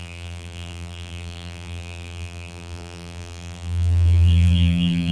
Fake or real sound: fake